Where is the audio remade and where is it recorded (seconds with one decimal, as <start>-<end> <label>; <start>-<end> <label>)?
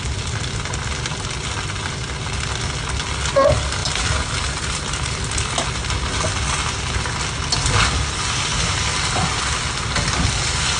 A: 0.0-10.8 recorded